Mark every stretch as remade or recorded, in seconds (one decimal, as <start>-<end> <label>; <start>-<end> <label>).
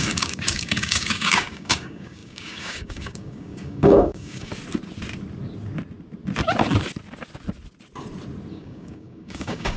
0.0-4.5 remade; 4.5-8.5 recorded; 8.5-9.8 remade